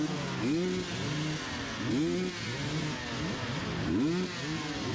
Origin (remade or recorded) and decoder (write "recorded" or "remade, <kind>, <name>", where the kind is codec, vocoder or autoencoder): recorded